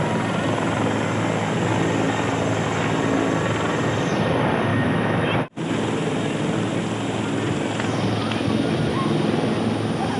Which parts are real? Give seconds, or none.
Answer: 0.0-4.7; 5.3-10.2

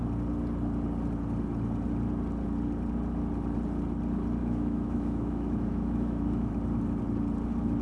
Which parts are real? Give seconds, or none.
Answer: 0.0-4.4; 6.5-7.8

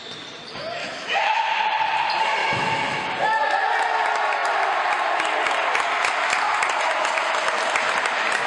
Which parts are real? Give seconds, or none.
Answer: 0.0-0.8; 1.4-2.4; 3.1-8.5

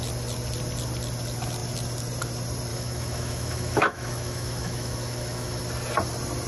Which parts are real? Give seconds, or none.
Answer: 0.0-2.7; 5.6-6.5

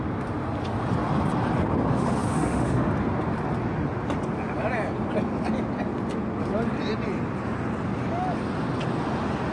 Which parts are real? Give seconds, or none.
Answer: 0.0-1.9; 2.9-9.5